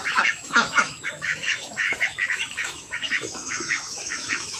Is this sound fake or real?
fake